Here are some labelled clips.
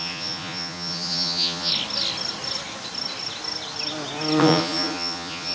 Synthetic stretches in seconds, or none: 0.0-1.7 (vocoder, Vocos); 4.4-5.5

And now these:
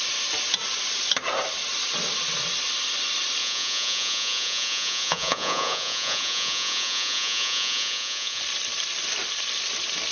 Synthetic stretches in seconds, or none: 3.4-8.4 (vocoder, Vocos)

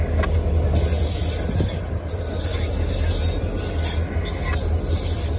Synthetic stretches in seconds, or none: none

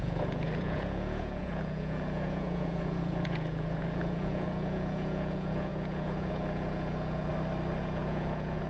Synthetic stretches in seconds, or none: 0.0-7.3 (vocoder, Vocos); 7.8-8.7